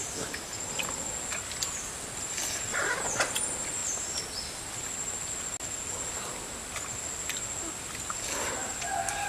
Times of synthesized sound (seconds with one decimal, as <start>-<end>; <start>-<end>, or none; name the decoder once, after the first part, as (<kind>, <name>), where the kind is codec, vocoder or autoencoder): none